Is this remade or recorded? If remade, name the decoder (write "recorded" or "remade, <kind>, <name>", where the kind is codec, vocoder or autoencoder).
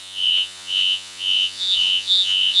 remade, vocoder, Vocos